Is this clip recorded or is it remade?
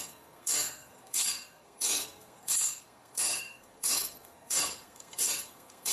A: remade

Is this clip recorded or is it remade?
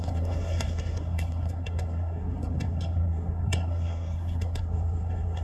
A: remade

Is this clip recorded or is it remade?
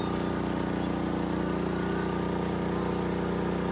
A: recorded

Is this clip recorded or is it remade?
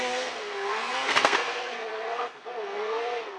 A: remade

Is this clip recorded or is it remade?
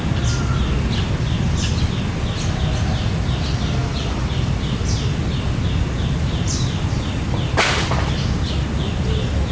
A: recorded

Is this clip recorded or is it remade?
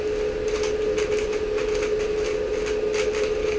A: recorded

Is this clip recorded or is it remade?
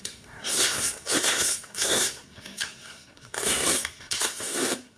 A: remade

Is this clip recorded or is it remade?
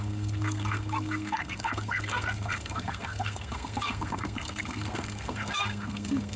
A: remade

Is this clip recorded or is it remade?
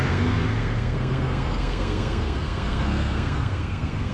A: remade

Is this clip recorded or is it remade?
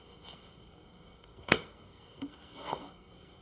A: remade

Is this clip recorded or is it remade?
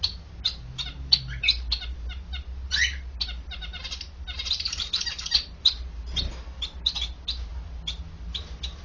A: recorded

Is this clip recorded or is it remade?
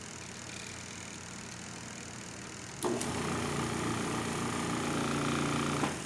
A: recorded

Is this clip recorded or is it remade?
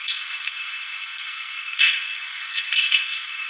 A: remade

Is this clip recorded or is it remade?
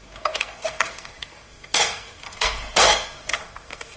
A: remade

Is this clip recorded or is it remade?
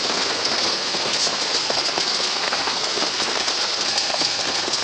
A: remade